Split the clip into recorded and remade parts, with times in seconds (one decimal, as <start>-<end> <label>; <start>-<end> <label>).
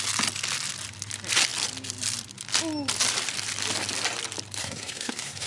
0.0-4.6 recorded; 4.6-5.5 remade